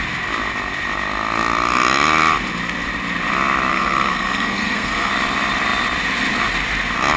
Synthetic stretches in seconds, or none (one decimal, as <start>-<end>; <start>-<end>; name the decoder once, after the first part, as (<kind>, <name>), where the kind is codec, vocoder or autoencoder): 3.7-5.1 (codec, SNAC)